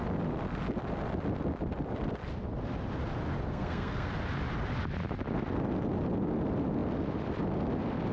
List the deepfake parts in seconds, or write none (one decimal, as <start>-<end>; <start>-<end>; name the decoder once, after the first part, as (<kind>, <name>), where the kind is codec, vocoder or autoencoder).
3.5-4.1 (codec, SNAC)